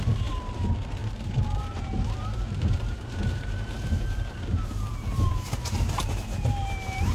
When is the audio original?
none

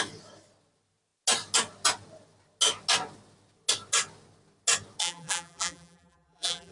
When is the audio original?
0.0-5.0

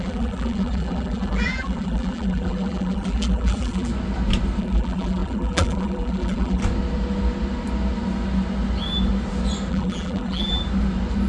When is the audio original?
3.9-4.6; 6.6-9.7; 10.6-11.3